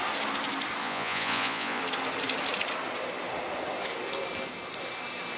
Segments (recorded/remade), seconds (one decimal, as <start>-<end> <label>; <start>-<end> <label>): 0.0-0.8 recorded; 0.8-1.8 remade; 1.8-5.4 recorded